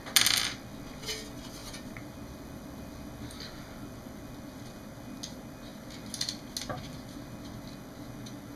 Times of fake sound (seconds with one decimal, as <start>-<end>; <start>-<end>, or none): 1.6-4.3